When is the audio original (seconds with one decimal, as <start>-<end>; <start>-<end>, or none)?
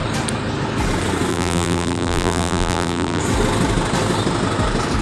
0.0-1.3; 3.2-5.0